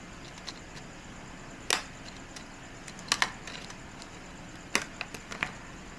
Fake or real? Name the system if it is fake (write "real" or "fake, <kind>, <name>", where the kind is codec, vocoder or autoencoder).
real